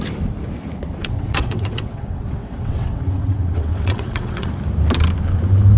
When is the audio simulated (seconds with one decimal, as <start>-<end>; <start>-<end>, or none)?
1.0-4.5